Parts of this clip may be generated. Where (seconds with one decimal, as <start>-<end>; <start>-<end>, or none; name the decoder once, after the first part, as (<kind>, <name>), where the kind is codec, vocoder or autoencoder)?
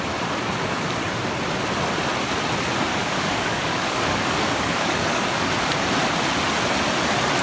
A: 2.9-5.5 (codec, DAC)